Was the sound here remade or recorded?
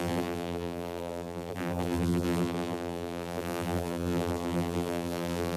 remade